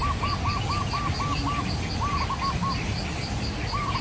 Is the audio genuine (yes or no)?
yes